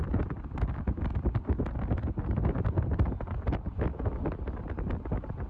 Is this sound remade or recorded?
recorded